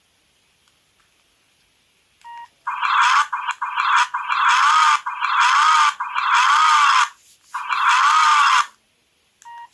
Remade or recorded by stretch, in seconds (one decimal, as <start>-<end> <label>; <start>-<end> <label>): 0.0-9.7 recorded